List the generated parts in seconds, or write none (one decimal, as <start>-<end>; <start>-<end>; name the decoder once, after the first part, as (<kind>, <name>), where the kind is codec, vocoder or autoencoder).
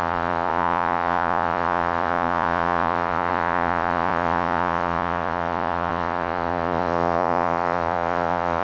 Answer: 0.0-8.6 (vocoder, Vocos)